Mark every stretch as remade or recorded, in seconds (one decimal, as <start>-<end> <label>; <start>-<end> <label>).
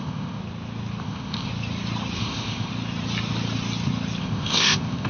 0.0-0.4 remade; 0.4-1.0 recorded; 1.0-1.5 remade; 1.5-2.2 recorded; 2.2-2.7 remade; 2.7-4.2 recorded; 4.2-5.1 remade